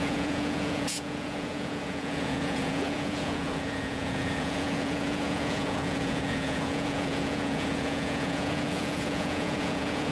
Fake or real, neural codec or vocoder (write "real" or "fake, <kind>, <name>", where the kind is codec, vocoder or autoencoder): fake, vocoder, Vocos